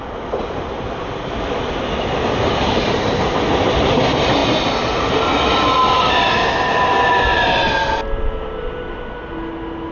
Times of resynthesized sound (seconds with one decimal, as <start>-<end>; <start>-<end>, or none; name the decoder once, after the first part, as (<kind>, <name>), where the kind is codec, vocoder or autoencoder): none